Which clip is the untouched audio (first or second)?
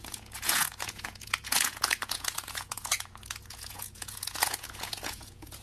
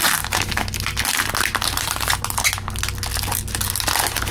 second